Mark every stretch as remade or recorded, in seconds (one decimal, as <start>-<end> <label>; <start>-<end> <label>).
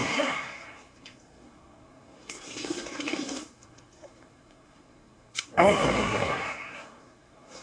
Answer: 0.0-7.6 remade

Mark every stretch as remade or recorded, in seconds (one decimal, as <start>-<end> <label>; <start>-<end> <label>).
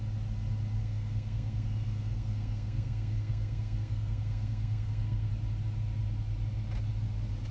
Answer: 0.0-0.8 recorded; 0.8-5.3 remade; 5.3-7.5 recorded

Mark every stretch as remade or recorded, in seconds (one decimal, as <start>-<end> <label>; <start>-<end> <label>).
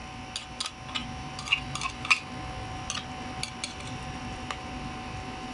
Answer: 0.0-5.5 recorded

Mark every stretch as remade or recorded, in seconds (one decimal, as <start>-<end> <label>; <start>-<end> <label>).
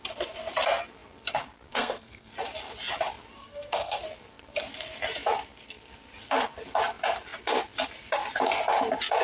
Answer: 0.0-1.7 recorded; 1.7-2.3 remade; 2.3-3.4 recorded; 3.4-4.0 remade; 4.0-9.2 recorded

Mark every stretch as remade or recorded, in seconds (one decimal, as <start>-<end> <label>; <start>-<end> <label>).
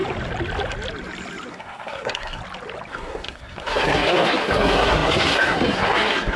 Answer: 0.0-1.5 recorded; 1.5-2.4 remade; 2.4-2.9 recorded; 2.9-6.4 remade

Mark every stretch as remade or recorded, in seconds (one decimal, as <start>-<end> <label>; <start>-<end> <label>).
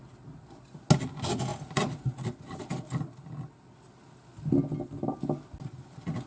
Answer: 0.0-6.3 recorded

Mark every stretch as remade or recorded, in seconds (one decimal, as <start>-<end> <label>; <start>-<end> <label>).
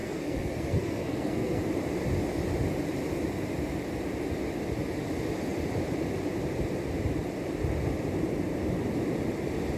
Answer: 0.0-1.6 remade; 1.6-9.8 recorded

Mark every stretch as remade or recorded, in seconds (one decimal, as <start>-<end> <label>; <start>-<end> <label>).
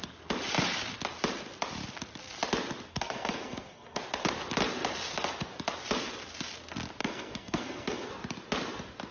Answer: 0.0-2.9 recorded; 2.9-4.0 remade; 4.0-7.0 recorded; 7.0-8.1 remade; 8.1-9.1 recorded